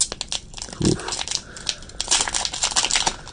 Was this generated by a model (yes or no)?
no